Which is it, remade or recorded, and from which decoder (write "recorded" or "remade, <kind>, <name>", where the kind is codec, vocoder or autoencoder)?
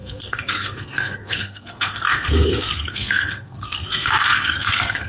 remade, codec, SNAC